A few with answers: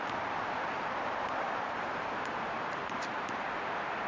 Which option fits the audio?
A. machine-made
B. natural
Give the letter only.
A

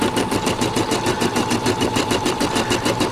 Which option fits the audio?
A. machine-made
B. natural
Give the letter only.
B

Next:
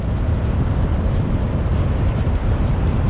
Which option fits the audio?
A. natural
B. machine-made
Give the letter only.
B